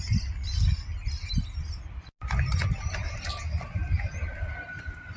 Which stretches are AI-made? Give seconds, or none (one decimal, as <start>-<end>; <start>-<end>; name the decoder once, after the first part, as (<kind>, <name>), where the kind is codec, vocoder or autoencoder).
none